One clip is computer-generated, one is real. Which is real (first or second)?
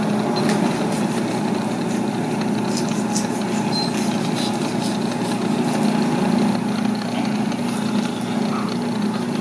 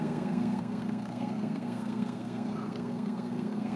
first